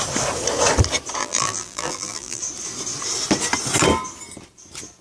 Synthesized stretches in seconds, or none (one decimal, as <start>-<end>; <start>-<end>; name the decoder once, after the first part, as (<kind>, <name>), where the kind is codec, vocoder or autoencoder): 1.2-2.4 (vocoder, BigVGAN v2)